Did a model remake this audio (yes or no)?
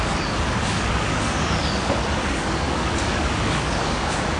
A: yes